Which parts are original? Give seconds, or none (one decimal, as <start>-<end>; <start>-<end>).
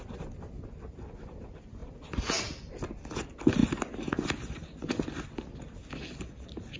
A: 0.0-6.8